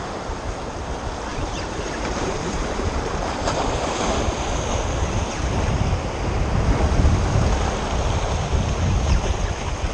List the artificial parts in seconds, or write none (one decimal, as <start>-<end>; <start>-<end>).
1.3-4.1